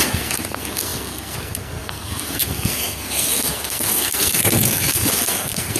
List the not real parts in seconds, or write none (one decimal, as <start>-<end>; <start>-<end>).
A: 0.0-5.8